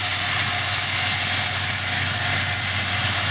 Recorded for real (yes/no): yes